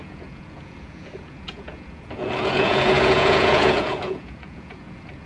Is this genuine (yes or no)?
no